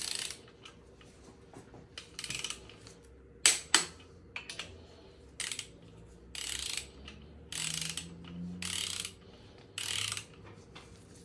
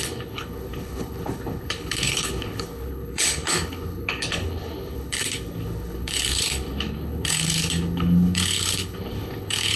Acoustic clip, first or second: first